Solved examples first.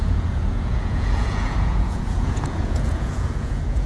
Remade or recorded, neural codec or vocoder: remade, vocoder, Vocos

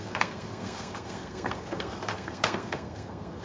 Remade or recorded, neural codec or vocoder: remade, codec, SNAC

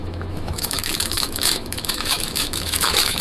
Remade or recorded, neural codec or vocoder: remade, autoencoder, DAC-VAE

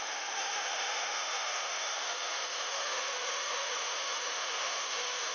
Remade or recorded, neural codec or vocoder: remade, autoencoder, DAC-VAE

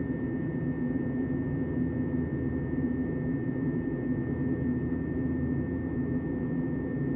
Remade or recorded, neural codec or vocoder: recorded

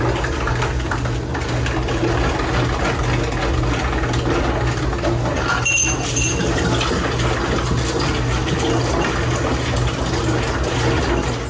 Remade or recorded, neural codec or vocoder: recorded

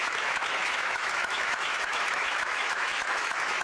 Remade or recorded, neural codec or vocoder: remade, autoencoder, DAC-VAE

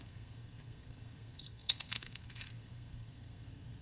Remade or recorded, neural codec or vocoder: remade, codec, SNAC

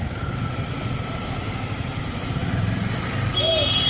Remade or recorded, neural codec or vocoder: recorded